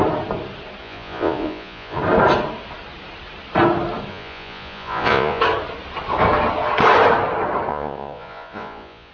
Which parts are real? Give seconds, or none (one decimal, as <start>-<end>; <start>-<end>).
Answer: 0.0-0.8; 2.0-4.1; 5.4-7.7